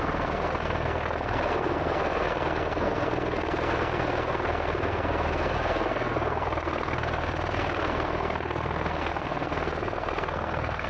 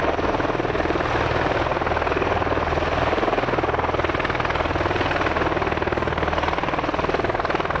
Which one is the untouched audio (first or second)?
second